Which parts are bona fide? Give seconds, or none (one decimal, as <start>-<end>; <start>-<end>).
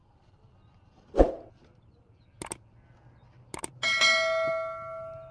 1.3-5.3